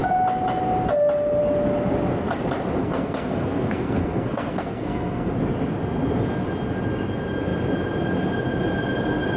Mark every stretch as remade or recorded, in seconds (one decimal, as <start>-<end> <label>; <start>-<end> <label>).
0.0-2.8 recorded; 2.8-5.3 remade; 5.3-9.4 recorded